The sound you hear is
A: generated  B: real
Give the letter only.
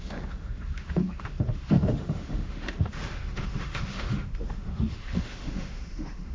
A